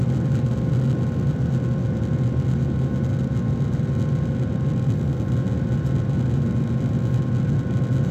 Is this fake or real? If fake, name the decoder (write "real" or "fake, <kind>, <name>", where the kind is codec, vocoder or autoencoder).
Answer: real